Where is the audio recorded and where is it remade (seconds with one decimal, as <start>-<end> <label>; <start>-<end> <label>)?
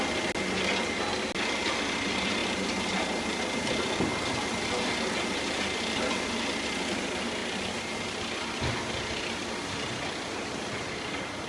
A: 0.0-3.3 recorded; 3.3-4.4 remade; 4.4-7.4 recorded; 7.4-8.2 remade; 8.2-11.5 recorded